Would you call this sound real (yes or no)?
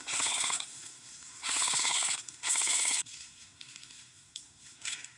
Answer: no